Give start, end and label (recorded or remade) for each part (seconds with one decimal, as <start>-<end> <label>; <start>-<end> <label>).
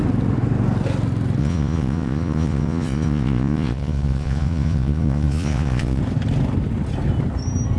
0.0-1.4 recorded; 1.4-6.0 remade; 6.0-7.8 recorded